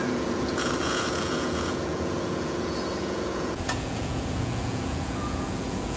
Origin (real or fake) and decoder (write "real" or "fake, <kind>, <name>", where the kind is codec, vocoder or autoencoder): fake, vocoder, Vocos